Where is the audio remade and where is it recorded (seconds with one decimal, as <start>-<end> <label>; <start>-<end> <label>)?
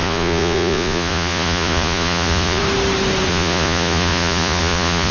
0.0-2.6 remade; 2.6-3.3 recorded; 3.3-5.1 remade